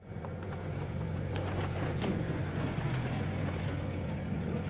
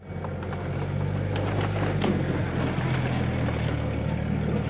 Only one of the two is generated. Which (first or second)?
first